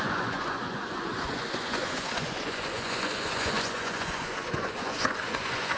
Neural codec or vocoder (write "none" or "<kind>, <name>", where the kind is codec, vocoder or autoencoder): vocoder, Vocos